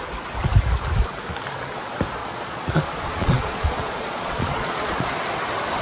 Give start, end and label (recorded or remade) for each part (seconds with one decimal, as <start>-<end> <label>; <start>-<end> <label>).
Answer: 0.0-2.2 recorded; 2.2-5.1 remade; 5.1-5.8 recorded